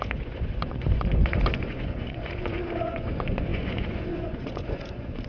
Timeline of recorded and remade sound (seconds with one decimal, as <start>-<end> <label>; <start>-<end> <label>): 0.0-5.3 remade